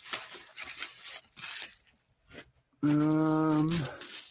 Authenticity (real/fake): real